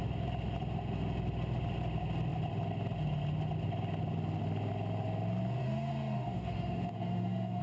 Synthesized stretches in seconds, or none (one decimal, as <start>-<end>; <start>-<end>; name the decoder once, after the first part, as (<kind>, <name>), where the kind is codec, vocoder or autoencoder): 5.6-7.6 (autoencoder, DAC-VAE)